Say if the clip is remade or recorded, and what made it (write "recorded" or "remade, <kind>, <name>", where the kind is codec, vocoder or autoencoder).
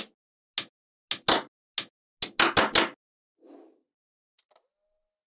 recorded